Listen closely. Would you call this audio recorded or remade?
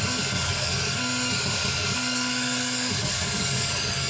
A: remade